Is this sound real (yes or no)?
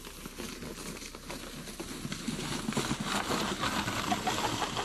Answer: yes